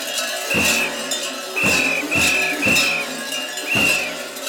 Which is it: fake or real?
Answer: real